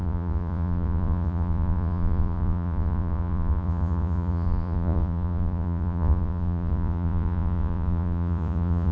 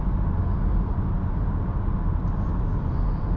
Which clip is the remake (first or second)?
first